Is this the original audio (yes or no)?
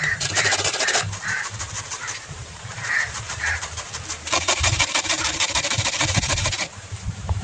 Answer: no